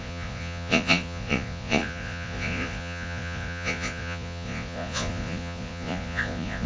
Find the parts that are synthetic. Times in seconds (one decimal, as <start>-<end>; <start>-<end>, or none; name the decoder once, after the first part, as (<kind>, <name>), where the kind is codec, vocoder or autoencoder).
0.0-6.7 (vocoder, Vocos)